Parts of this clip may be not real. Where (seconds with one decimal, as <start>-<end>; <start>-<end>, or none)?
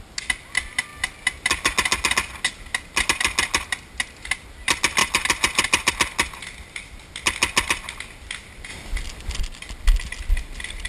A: 5.0-5.9; 8.7-9.4